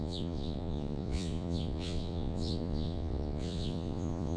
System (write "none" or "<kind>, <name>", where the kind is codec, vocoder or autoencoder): vocoder, Vocos